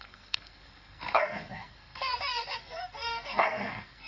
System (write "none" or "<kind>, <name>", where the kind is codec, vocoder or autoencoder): codec, SNAC